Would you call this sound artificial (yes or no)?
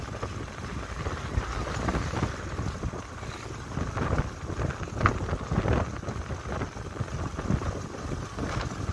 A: no